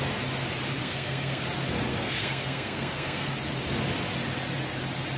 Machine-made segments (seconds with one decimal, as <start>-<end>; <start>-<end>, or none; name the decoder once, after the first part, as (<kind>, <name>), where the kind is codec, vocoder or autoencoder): 0.8-1.4 (codec, SNAC); 1.9-3.3